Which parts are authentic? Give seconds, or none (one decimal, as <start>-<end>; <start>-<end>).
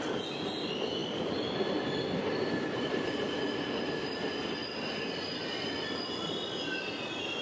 0.0-7.4